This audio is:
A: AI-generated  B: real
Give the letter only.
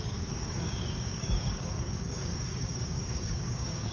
A